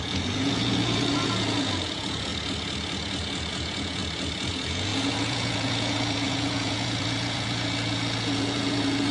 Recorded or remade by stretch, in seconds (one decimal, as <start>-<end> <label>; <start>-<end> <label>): 0.0-2.3 remade; 2.3-3.5 recorded; 3.5-4.0 remade; 4.0-4.5 recorded; 4.5-9.1 remade